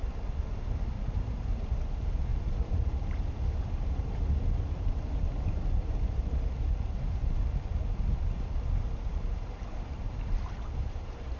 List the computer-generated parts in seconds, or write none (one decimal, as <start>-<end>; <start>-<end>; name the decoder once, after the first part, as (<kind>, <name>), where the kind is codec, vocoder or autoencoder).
0.6-7.2 (vocoder, BigVGAN v2); 8.1-11.4